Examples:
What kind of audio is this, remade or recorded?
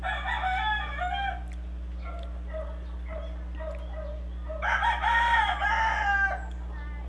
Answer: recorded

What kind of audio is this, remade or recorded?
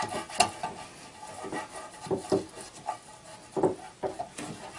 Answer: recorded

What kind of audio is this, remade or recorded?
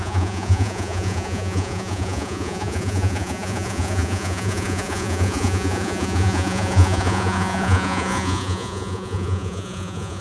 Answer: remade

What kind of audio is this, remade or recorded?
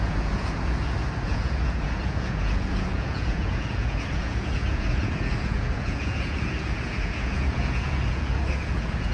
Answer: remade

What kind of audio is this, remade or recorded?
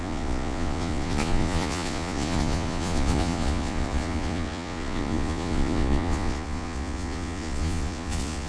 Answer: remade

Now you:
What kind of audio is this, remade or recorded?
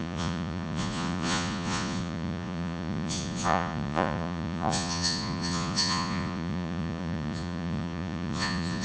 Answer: remade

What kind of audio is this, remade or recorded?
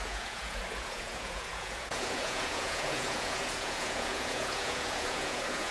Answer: remade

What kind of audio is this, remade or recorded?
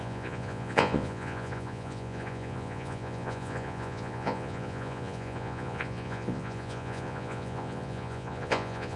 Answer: remade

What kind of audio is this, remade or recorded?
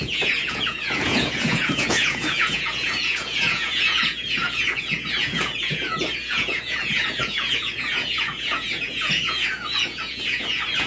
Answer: remade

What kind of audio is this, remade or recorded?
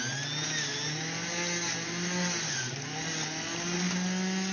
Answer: recorded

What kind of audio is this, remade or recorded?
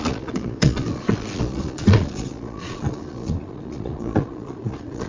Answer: remade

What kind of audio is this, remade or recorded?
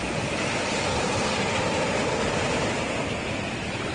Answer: recorded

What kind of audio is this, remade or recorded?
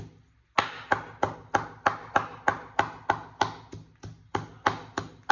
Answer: recorded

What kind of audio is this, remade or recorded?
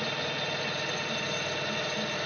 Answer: recorded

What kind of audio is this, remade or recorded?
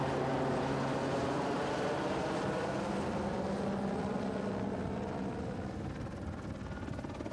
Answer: recorded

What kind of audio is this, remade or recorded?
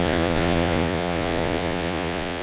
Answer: remade